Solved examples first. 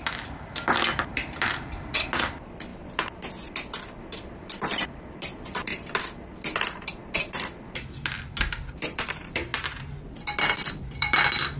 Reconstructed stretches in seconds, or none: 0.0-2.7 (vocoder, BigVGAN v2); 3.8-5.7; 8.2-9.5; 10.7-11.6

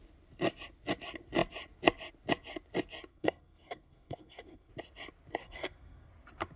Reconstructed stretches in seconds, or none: 3.1-4.7 (codec, SNAC); 5.4-6.1